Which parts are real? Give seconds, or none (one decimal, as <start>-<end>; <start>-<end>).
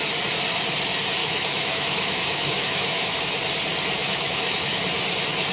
0.0-1.2; 3.2-4.0; 4.8-5.5